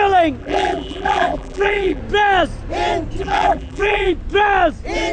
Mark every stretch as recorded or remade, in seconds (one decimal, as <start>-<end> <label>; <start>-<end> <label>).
0.0-0.4 recorded; 0.4-2.0 remade; 2.0-3.2 recorded; 3.2-4.1 remade; 4.1-5.1 recorded